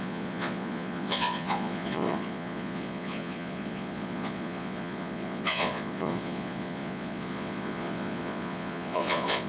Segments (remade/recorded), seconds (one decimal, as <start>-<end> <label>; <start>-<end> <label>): 0.0-9.5 remade